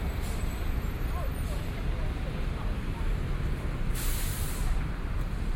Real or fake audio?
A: fake